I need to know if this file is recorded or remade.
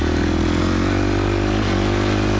recorded